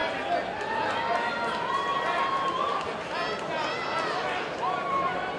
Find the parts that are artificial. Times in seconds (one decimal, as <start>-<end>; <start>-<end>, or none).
none